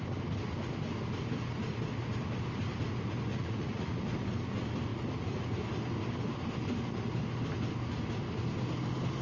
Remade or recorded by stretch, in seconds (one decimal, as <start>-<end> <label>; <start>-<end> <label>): 0.0-3.3 recorded; 3.3-3.9 remade; 3.9-9.2 recorded